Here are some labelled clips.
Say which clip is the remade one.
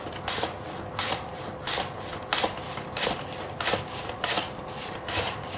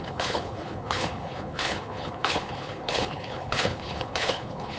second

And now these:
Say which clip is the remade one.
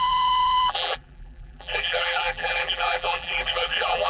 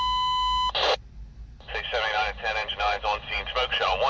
first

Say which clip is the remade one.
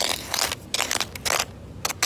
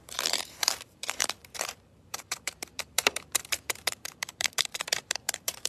second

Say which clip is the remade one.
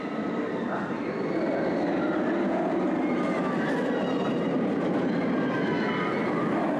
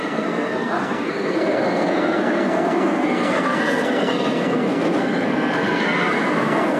second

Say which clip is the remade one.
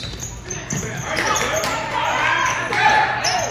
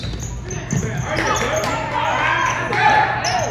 first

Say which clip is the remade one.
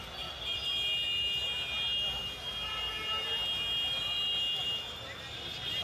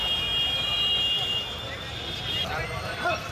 second